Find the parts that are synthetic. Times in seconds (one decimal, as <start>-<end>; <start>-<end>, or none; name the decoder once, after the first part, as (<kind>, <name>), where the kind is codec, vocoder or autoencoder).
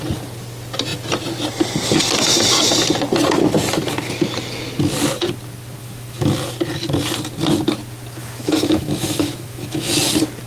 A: 5.8-6.4 (autoencoder, DAC-VAE); 8.2-9.9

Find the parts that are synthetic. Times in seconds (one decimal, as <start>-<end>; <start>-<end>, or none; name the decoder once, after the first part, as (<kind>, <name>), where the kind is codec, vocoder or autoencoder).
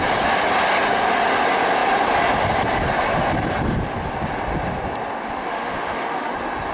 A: 5.5-6.3 (autoencoder, DAC-VAE)